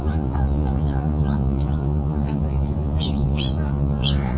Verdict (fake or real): fake